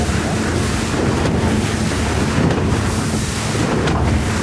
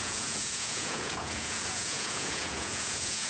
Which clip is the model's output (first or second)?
second